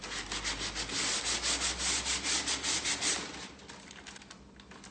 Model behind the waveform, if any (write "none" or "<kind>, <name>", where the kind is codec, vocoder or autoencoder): none